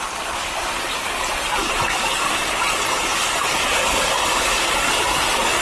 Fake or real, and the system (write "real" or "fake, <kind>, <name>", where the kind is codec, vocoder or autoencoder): real